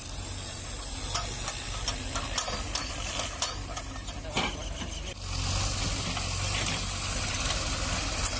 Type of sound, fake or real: real